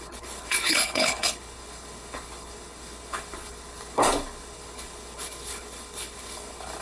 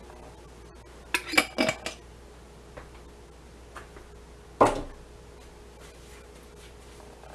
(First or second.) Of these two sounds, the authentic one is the second